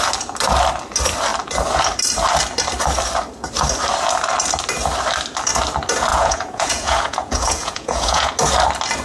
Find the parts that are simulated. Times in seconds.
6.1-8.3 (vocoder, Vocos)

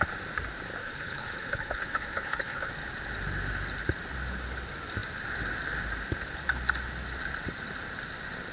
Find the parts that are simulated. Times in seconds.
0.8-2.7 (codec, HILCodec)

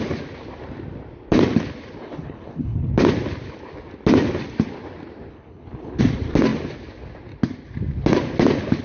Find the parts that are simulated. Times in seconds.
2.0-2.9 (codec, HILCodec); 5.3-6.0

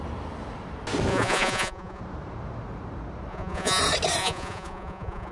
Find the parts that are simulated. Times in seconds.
1.1-2.0 (vocoder, Vocos); 3.3-3.8; 4.2-5.3